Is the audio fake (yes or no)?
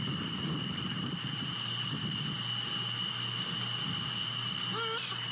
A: no